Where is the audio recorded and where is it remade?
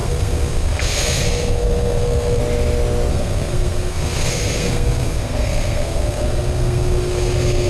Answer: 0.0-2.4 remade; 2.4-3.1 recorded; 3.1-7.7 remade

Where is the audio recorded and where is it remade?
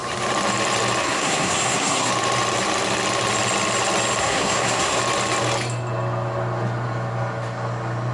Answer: 0.0-1.0 recorded; 1.0-2.1 remade; 2.1-4.2 recorded; 4.2-5.0 remade; 5.0-8.1 recorded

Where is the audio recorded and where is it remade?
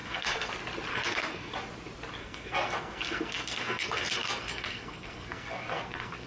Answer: 0.0-0.5 remade; 0.5-0.9 recorded; 0.9-1.5 remade; 1.5-2.2 recorded; 2.2-6.3 remade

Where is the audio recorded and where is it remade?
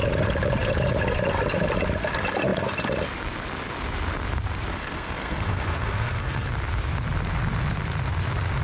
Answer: 0.0-4.7 recorded; 4.7-6.5 remade; 6.5-8.6 recorded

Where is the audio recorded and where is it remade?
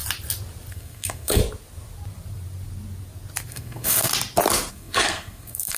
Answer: 0.0-0.7 recorded; 0.7-1.4 remade; 1.4-3.5 recorded; 3.5-4.1 remade; 4.1-4.7 recorded; 4.7-5.8 remade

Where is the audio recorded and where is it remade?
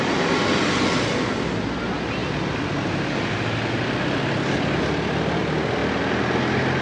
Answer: 0.0-6.8 recorded